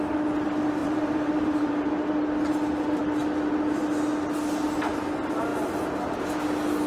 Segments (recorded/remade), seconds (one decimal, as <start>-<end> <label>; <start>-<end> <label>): 0.0-0.8 recorded; 0.8-1.9 remade; 1.9-6.9 recorded